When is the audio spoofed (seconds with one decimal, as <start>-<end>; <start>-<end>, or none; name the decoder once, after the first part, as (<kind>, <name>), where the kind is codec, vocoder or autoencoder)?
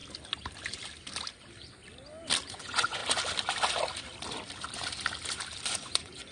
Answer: 2.5-3.0 (vocoder, Vocos); 5.7-6.3